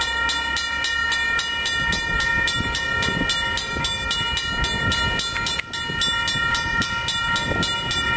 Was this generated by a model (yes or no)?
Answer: no